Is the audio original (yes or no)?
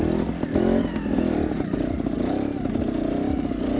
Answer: yes